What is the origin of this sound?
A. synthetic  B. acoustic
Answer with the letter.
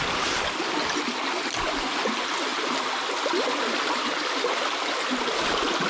B